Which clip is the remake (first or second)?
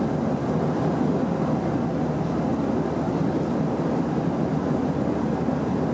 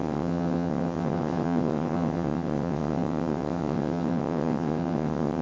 second